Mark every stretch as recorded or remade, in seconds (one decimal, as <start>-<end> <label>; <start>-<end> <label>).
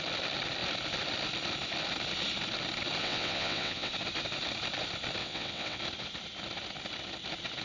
0.0-3.0 recorded; 3.0-3.9 remade; 3.9-5.2 recorded; 5.2-5.8 remade; 5.8-7.6 recorded